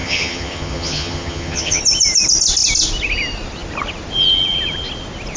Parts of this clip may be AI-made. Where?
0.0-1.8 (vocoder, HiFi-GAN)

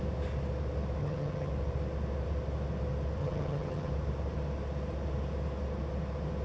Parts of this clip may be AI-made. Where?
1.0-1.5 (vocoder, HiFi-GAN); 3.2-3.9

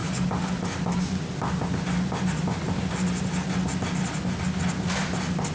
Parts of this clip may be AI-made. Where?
none

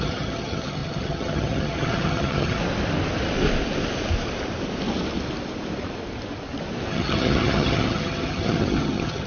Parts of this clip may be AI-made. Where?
0.0-2.6 (vocoder, HiFi-GAN); 6.9-9.3

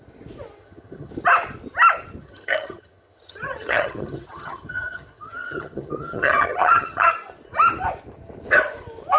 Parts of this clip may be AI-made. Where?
0.6-1.1 (vocoder, HiFi-GAN); 2.2-7.1